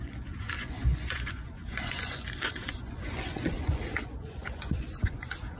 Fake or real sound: fake